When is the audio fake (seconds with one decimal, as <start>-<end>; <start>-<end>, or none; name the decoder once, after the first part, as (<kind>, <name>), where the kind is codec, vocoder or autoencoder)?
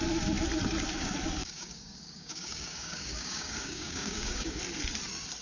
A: 1.4-4.6 (codec, DAC)